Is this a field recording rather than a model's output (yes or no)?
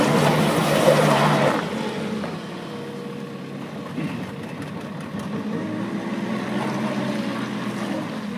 yes